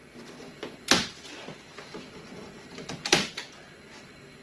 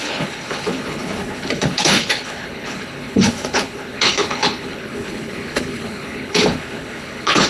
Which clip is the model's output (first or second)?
second